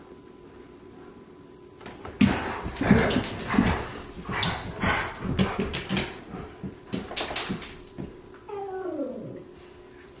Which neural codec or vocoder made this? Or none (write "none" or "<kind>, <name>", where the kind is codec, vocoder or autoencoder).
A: none